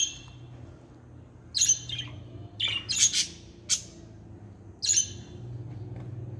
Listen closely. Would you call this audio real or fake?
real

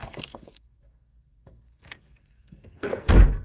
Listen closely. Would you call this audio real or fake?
fake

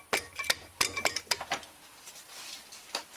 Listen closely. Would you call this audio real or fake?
real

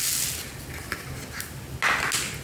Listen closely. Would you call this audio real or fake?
real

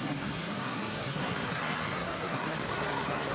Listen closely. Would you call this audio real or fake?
fake